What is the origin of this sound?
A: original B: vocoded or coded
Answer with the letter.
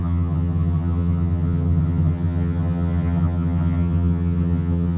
B